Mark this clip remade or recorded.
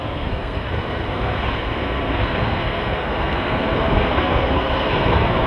remade